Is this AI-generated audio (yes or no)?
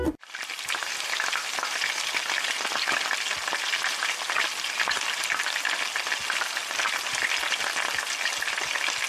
no